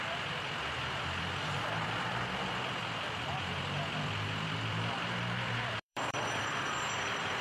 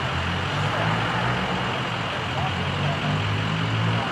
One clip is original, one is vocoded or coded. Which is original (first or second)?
second